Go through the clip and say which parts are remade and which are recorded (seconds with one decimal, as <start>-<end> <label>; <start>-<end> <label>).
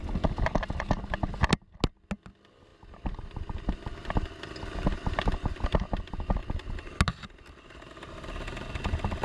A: 0.0-9.2 recorded